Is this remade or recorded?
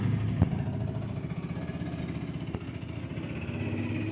recorded